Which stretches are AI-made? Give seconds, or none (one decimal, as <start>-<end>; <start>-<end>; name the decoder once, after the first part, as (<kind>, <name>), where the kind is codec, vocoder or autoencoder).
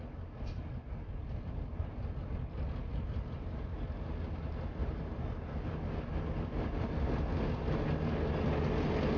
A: none